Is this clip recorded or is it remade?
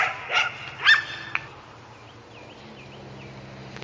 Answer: recorded